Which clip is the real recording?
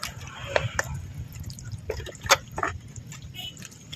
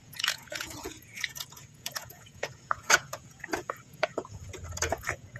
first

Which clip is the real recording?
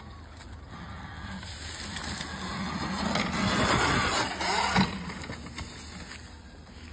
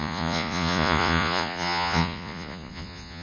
first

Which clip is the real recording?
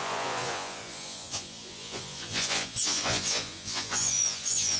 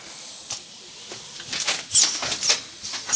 second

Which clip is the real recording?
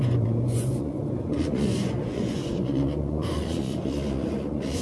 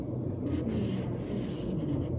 second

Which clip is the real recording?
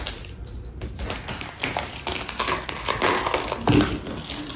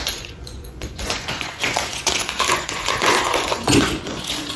first